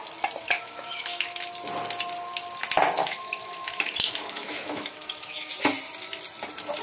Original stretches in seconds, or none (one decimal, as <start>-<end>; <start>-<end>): 0.0-0.4; 1.4-3.0; 5.5-6.8